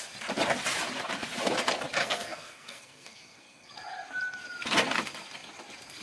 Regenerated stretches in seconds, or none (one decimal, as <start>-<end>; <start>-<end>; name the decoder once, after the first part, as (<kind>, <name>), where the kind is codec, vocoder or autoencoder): 2.0-3.7 (codec, SNAC)